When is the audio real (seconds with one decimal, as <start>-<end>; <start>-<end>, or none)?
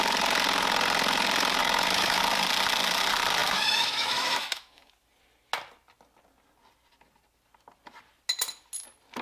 0.0-1.6; 2.2-3.4; 4.9-9.2